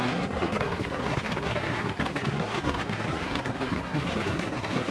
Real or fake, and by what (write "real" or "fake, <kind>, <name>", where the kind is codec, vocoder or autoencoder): fake, codec, SNAC